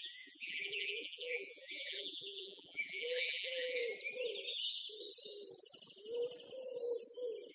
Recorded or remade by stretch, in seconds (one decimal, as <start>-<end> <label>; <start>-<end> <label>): 0.0-3.8 remade; 3.8-7.5 recorded